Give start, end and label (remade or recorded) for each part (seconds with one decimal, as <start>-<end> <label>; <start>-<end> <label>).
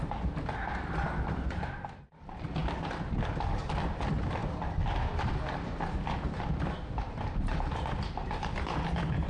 0.0-9.3 recorded